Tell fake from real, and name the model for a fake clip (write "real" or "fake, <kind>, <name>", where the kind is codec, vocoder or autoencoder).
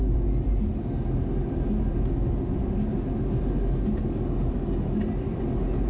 real